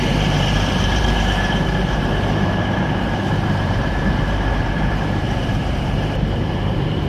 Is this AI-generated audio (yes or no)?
yes